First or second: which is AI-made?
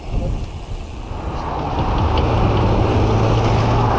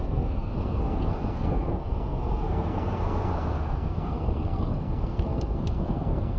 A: second